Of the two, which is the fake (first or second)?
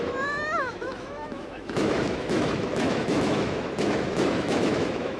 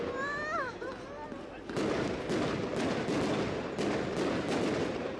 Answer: first